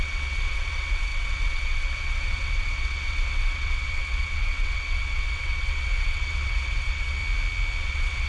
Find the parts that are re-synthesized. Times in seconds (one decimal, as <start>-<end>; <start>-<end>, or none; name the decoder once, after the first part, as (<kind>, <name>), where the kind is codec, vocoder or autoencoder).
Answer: 0.0-7.2 (vocoder, WaveNeXt); 7.8-8.3